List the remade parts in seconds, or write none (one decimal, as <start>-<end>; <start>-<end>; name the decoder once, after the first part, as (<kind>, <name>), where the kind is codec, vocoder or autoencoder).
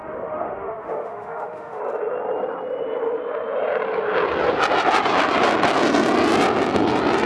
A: 0.0-1.8 (autoencoder, DAC-VAE)